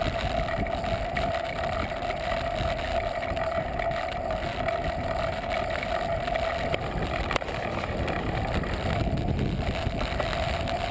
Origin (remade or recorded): recorded